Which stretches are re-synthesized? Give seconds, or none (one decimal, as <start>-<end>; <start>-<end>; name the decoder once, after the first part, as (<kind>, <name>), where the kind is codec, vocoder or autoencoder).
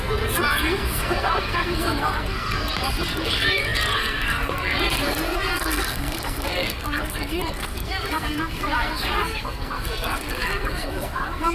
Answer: 0.0-11.5 (codec, SNAC)